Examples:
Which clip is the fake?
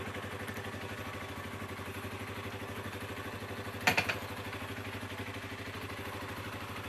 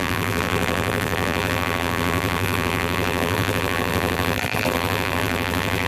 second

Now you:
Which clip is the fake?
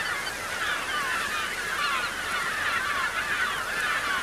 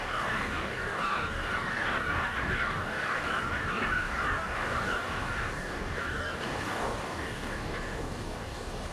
second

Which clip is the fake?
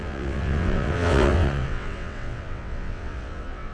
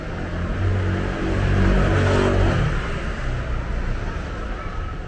first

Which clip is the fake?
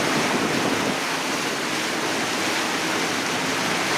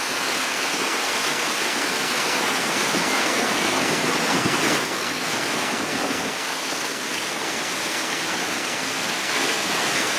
second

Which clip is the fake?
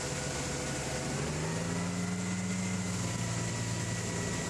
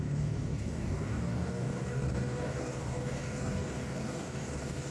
second